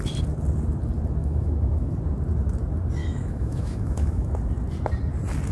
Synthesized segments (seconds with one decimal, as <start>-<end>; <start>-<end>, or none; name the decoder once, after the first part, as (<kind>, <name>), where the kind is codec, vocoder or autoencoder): 1.2-1.9 (autoencoder, DAC-VAE); 3.0-4.3